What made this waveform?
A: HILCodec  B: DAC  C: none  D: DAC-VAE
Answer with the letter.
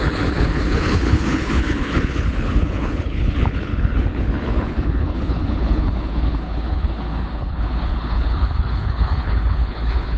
A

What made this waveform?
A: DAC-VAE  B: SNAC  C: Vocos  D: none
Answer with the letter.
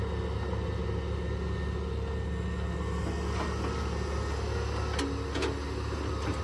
D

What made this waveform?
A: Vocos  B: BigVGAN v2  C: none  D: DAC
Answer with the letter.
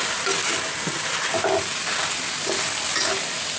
C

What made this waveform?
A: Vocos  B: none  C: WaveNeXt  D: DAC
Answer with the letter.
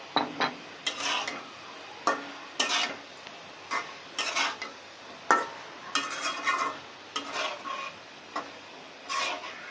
B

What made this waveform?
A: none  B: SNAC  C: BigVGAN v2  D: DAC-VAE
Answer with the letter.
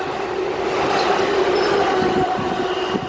A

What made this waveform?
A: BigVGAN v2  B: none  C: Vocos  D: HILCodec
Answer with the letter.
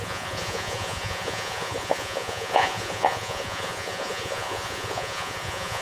C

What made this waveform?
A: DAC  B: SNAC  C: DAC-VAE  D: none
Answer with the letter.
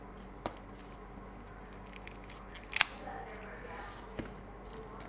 D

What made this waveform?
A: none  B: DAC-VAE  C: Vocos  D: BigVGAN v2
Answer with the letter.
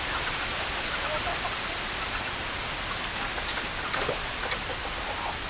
A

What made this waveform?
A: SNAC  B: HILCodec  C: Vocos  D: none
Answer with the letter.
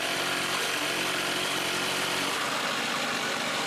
D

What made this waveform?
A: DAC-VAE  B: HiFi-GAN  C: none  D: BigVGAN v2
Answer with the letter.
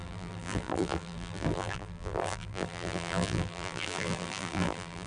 D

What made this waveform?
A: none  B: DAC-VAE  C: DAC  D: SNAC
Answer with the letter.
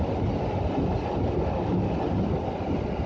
A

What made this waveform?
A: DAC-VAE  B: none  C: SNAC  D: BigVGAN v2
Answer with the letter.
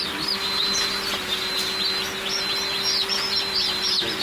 B